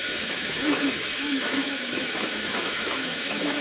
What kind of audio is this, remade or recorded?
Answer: remade